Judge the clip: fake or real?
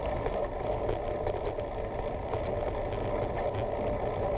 real